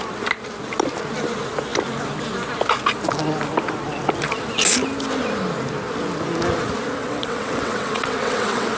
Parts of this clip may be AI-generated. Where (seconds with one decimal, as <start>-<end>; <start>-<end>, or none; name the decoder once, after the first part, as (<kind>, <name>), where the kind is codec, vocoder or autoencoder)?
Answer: 7.0-8.8 (vocoder, WaveNeXt)